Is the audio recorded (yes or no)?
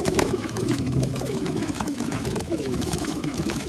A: no